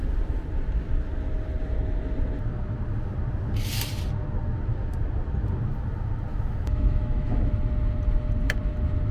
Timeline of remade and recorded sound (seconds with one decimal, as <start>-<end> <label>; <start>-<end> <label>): 0.0-6.3 recorded; 6.3-7.5 remade; 7.5-9.1 recorded